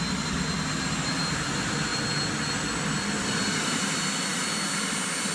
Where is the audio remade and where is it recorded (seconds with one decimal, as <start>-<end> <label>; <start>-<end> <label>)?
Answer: 0.0-5.3 recorded